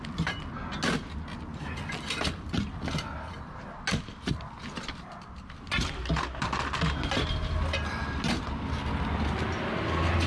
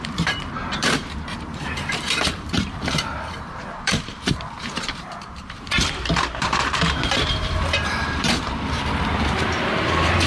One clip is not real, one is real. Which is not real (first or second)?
second